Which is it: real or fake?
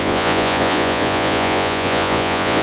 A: fake